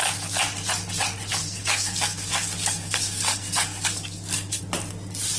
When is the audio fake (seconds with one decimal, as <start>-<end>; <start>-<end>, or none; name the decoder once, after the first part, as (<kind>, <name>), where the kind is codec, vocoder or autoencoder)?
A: 1.4-4.6 (codec, SNAC)